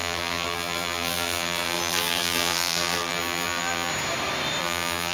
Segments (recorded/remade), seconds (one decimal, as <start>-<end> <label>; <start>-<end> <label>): 0.0-3.9 remade; 3.9-4.6 recorded; 4.6-5.1 remade